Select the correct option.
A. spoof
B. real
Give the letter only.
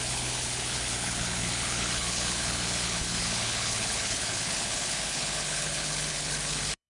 A